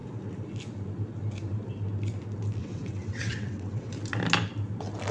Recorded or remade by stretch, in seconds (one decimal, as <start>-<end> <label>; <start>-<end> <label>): 0.0-2.6 recorded; 2.6-3.9 remade; 3.9-5.1 recorded